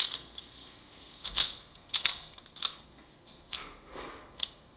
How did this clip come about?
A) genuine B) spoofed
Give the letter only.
B